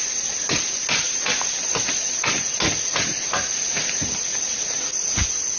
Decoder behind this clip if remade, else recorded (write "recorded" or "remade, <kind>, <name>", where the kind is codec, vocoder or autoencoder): recorded